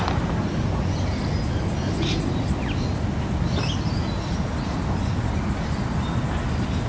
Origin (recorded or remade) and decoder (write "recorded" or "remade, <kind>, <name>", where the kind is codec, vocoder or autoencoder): recorded